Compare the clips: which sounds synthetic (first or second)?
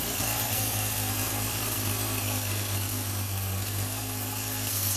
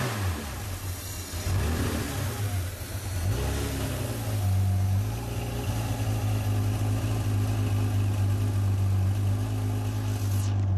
first